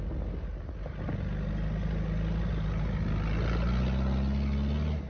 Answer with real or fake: real